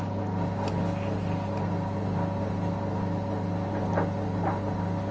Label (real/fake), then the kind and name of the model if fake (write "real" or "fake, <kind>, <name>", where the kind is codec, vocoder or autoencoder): real